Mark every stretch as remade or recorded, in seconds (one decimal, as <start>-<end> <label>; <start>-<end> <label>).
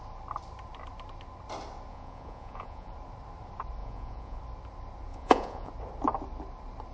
0.0-1.9 recorded; 1.9-2.9 remade; 2.9-3.8 recorded; 3.8-4.4 remade; 4.4-5.1 recorded; 5.1-5.7 remade; 5.7-6.9 recorded